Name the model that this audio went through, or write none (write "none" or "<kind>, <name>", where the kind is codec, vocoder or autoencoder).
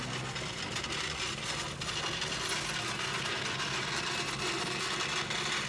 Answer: none